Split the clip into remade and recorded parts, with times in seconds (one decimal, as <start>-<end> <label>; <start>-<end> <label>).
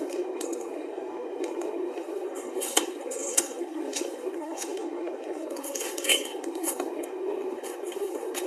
0.0-8.5 remade